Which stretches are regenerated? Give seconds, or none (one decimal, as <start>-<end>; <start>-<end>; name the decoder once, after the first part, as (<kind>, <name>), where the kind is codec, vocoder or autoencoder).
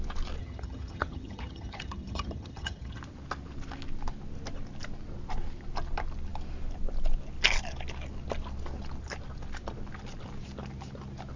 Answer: 0.4-3.0 (vocoder, HiFi-GAN)